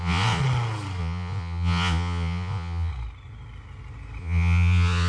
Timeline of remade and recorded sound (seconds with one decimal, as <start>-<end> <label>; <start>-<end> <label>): 0.0-0.4 remade; 0.4-1.0 recorded; 1.0-2.9 remade; 2.9-4.2 recorded; 4.2-5.1 remade